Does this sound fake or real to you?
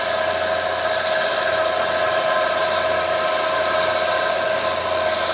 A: real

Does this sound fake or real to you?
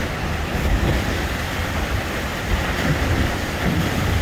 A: real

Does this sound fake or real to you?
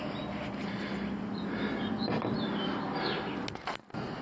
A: real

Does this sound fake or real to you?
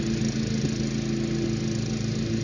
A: real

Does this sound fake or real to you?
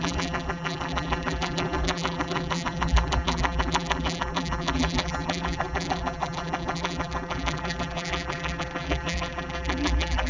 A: fake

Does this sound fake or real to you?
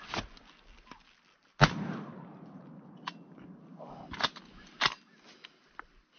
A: real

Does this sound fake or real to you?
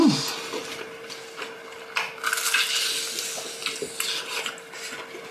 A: real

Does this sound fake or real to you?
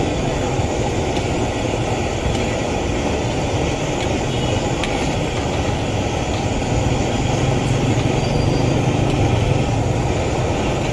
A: real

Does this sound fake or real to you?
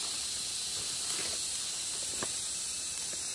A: real